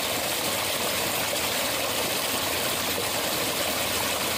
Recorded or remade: recorded